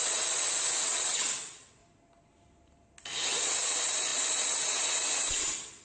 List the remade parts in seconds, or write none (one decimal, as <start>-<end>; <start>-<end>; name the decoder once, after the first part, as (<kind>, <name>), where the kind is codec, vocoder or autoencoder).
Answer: 0.0-1.8 (vocoder, WaveNeXt); 3.4-5.8